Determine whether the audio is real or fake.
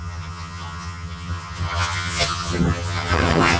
fake